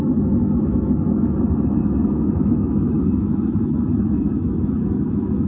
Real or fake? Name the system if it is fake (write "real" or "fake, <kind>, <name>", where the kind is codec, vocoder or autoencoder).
fake, autoencoder, DAC-VAE